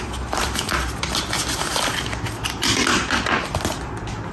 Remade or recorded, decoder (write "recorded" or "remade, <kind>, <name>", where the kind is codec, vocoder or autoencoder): recorded